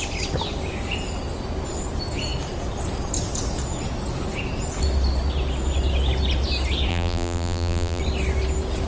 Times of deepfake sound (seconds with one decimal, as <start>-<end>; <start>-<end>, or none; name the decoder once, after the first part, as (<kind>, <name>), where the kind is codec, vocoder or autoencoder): 6.9-8.0 (vocoder, BigVGAN v2)